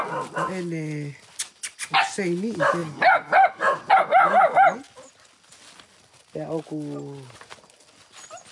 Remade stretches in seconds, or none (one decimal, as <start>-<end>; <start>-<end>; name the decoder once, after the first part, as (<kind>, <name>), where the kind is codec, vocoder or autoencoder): none